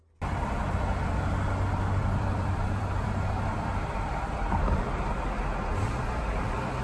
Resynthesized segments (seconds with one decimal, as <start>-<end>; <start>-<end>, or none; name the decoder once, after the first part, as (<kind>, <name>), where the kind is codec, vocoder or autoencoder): 2.0-5.1 (vocoder, BigVGAN v2)